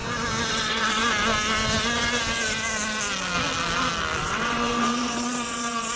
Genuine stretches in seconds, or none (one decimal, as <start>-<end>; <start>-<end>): 0.0-0.5; 1.0-4.2